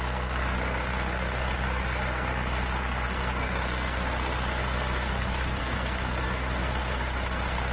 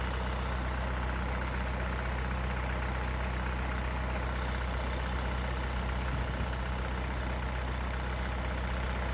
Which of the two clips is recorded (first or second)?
second